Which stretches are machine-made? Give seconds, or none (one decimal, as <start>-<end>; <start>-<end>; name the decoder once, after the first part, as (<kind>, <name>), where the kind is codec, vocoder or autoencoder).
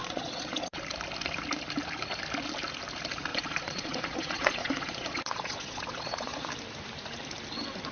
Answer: 0.0-0.8 (vocoder, Vocos); 3.3-6.5